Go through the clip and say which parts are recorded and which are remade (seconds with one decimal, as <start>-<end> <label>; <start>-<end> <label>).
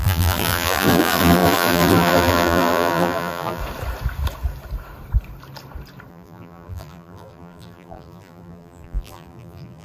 0.0-3.6 remade; 3.6-6.1 recorded; 6.1-9.8 remade